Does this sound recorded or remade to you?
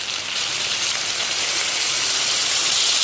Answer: remade